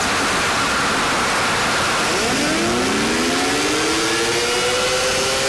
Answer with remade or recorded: recorded